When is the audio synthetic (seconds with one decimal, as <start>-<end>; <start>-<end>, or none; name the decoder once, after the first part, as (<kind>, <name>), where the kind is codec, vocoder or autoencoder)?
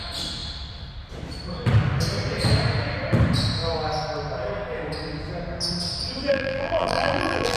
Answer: 6.3-7.6 (vocoder, BigVGAN v2)